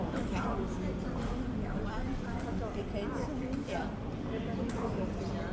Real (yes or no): yes